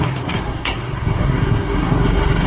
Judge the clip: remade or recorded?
remade